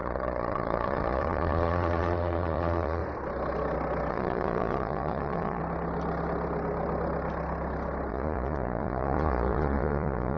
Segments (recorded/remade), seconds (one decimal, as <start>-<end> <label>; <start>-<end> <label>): 0.0-3.0 remade; 3.0-4.1 recorded; 4.1-5.6 remade; 5.6-8.1 recorded; 8.1-10.4 remade